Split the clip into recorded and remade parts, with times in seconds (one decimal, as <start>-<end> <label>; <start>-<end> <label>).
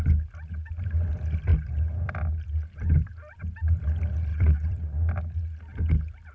0.0-4.3 recorded; 4.3-5.1 remade; 5.1-6.3 recorded